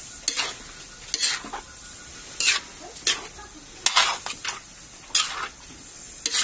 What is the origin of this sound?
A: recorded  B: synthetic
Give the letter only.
A